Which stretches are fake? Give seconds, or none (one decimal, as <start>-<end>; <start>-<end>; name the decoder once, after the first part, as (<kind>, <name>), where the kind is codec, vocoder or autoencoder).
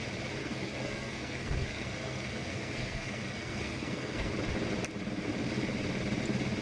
0.4-4.3 (codec, SNAC)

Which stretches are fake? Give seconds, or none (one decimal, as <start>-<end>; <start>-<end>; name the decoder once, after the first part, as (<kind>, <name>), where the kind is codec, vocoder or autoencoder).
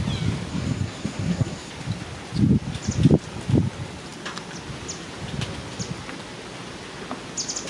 0.5-1.7 (codec, SNAC)